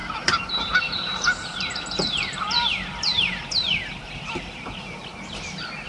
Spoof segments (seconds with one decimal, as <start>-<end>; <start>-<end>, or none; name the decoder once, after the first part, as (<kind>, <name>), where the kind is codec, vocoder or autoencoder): 0.0-3.5 (vocoder, BigVGAN v2)